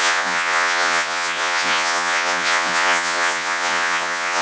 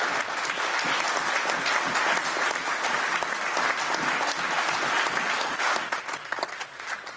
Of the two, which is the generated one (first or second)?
first